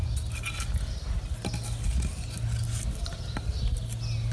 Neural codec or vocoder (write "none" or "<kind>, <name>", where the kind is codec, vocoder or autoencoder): none